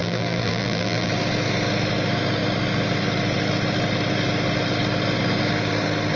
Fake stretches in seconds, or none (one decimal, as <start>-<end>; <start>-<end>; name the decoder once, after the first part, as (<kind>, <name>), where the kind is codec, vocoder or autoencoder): 0.0-1.1 (vocoder, BigVGAN v2)